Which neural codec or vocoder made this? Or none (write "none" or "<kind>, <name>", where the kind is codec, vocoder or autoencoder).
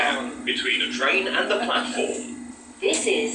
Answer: none